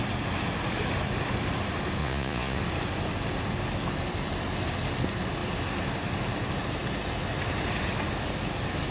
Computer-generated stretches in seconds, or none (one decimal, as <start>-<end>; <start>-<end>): 2.0-2.6